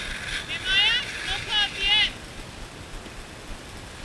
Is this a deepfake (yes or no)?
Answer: no